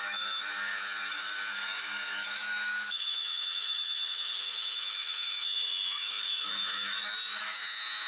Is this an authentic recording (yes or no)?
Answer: no